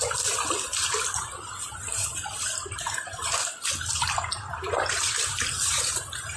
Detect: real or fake real